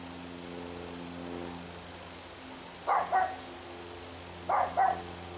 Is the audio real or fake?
real